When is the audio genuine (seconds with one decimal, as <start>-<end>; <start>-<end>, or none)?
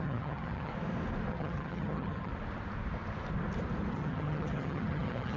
0.7-1.3; 2.3-3.9